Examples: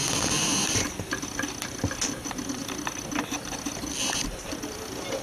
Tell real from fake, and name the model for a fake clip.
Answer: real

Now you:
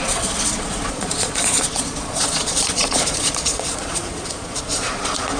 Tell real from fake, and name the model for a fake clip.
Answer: fake, vocoder, Vocos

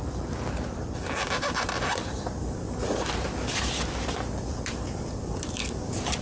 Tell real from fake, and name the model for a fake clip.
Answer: fake, vocoder, BigVGAN v2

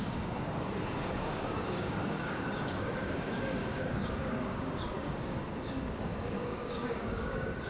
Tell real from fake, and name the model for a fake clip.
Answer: fake, codec, DAC